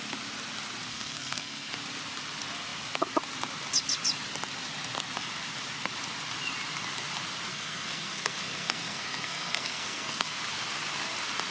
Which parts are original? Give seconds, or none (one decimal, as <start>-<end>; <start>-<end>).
0.0-0.9; 1.7-7.5; 10.4-11.5